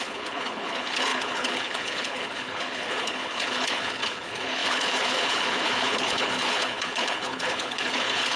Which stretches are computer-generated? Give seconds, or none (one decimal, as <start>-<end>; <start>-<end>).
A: 0.0-8.4